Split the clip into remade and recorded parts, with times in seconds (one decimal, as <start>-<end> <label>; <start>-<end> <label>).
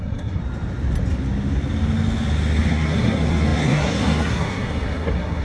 0.0-0.4 remade; 0.4-2.7 recorded; 2.7-5.4 remade